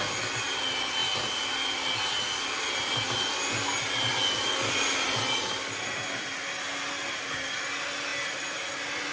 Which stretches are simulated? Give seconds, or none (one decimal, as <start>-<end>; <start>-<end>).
none

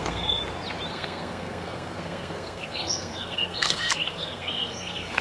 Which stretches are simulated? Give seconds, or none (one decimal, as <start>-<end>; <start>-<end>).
0.0-0.4; 0.9-5.2

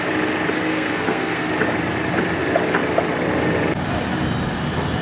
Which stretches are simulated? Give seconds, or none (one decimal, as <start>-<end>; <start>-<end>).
0.7-1.5

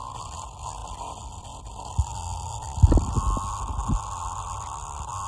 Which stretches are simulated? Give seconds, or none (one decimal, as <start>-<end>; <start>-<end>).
none

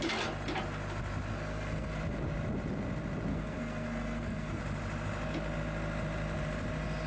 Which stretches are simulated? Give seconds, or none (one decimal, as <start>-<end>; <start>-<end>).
1.3-2.0; 3.3-4.6